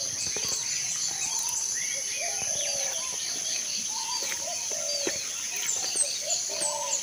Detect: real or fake real